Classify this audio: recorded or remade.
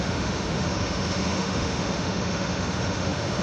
remade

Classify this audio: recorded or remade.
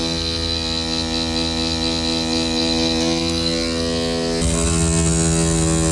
recorded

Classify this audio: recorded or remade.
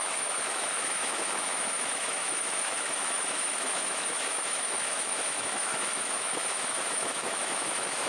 remade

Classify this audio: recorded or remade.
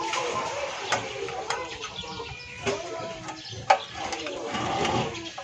recorded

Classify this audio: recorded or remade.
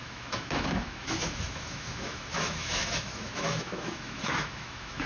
remade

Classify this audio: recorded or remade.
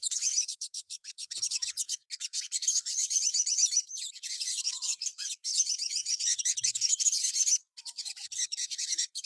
remade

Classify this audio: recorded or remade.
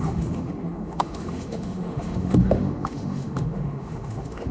remade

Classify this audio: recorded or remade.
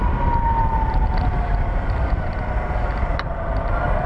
recorded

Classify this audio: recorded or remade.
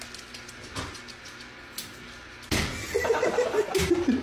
recorded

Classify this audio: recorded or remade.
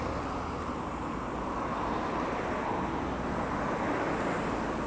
recorded